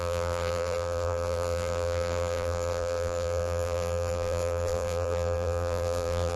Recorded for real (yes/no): no